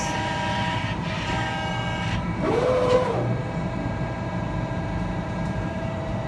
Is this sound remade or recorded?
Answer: remade